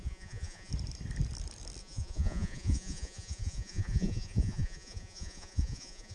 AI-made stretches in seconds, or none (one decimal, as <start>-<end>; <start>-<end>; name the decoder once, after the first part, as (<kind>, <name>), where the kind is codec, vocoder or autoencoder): 0.0-0.7 (vocoder, Vocos); 1.8-6.1